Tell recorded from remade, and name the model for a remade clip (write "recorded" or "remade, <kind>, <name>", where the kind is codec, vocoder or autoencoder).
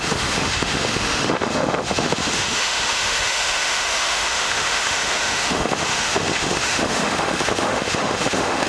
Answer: remade, autoencoder, DAC-VAE